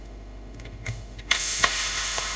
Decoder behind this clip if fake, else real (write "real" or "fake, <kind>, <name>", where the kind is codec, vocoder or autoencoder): fake, autoencoder, DAC-VAE